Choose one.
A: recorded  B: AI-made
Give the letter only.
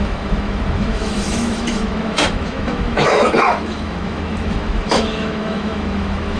B